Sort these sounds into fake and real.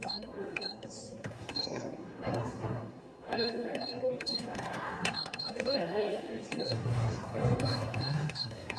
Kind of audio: fake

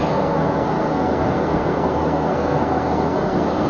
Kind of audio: fake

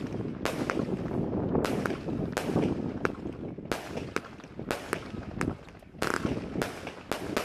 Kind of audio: real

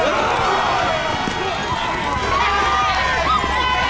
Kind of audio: real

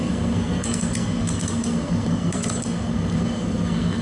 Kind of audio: fake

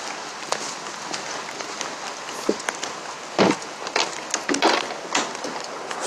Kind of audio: real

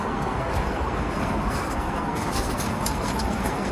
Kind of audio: fake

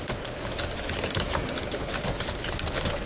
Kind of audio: real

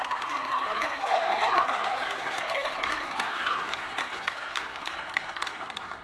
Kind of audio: fake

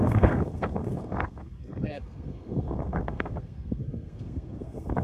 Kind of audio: fake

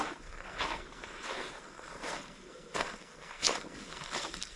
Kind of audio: fake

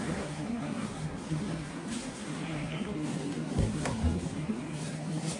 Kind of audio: fake